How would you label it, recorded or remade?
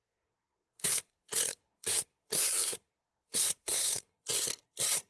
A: remade